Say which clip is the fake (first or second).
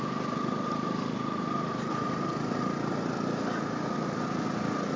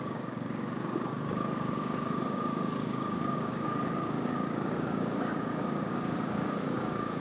second